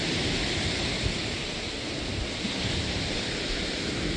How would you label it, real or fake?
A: real